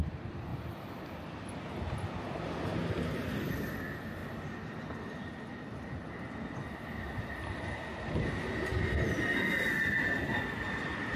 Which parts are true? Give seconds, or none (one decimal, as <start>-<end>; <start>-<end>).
0.5-3.7; 4.2-7.2; 8.7-9.5